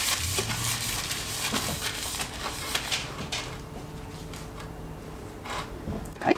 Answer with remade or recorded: recorded